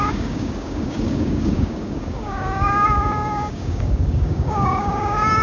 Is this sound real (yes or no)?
no